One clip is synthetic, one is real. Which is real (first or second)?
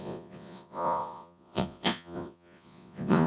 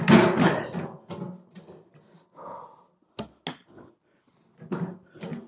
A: second